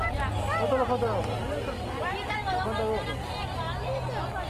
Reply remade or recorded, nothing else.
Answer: recorded